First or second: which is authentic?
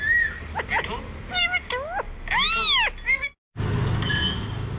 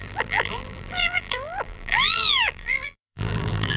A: first